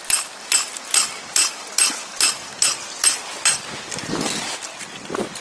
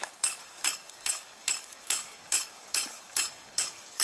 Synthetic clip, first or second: second